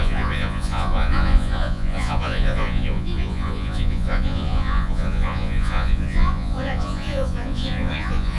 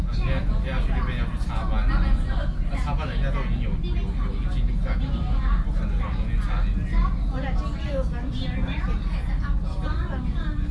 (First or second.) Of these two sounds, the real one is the second